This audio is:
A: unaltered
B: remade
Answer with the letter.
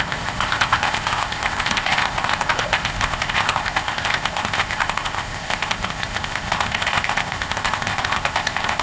B